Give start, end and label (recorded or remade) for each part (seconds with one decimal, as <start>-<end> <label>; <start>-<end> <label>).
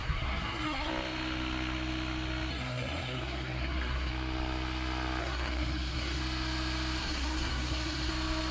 0.0-0.9 remade; 0.9-2.5 recorded; 2.5-4.1 remade; 4.1-5.2 recorded; 5.2-6.2 remade; 6.2-7.0 recorded; 7.0-8.1 remade; 8.1-8.5 recorded